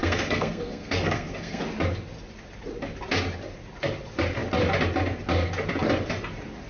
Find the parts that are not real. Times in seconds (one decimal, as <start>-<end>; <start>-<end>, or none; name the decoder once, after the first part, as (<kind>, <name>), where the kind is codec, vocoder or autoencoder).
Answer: 0.0-1.6 (codec, SNAC)